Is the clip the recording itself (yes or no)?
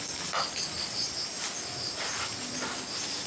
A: yes